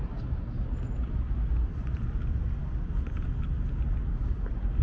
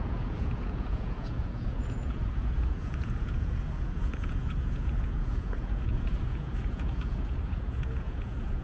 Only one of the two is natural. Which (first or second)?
first